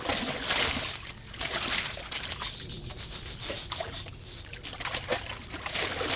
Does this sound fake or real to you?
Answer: real